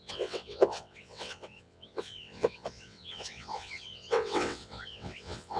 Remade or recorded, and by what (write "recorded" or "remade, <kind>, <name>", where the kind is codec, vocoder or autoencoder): remade, vocoder, WaveNeXt